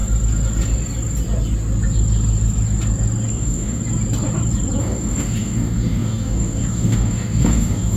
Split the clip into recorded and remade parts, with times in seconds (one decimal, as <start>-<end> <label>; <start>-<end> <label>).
0.0-3.3 recorded; 3.3-3.8 remade; 3.8-4.8 recorded; 4.8-8.0 remade